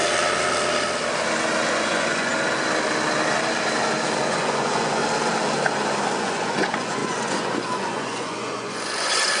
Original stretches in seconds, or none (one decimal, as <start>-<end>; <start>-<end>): 0.0-1.7; 2.3-4.2; 5.0-6.2